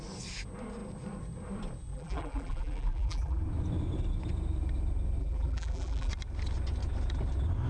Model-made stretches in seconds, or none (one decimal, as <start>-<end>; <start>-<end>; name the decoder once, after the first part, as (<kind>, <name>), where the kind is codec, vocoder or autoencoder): 1.9-3.4 (vocoder, BigVGAN v2); 5.2-6.1